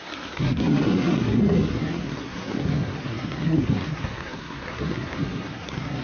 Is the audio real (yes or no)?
no